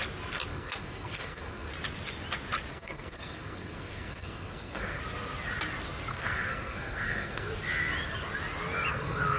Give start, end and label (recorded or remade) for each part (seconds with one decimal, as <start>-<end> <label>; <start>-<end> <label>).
0.0-0.5 recorded; 0.5-1.7 remade; 1.7-2.7 recorded; 2.7-5.0 remade; 5.0-6.1 recorded; 6.1-7.5 remade; 7.5-8.9 recorded; 8.9-9.4 remade